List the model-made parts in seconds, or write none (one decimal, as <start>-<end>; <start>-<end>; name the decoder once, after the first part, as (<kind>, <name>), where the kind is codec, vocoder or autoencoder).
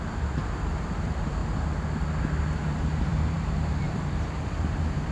0.0-1.4 (vocoder, BigVGAN v2); 2.4-5.1